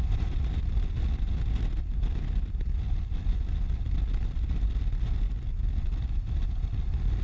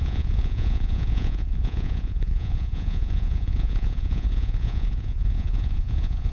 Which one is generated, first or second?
second